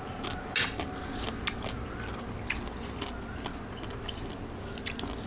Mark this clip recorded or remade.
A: recorded